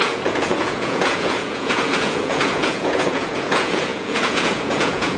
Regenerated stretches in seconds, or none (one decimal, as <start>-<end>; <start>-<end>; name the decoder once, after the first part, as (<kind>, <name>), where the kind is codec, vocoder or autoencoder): 0.0-5.2 (vocoder, Vocos)